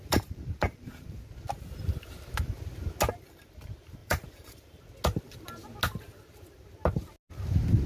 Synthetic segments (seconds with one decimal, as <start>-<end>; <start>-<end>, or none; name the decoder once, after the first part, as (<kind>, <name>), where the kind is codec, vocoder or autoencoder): 0.0-1.2 (vocoder, BigVGAN v2); 4.0-4.8